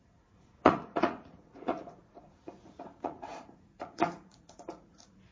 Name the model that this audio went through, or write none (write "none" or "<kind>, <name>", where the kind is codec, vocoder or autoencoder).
vocoder, Vocos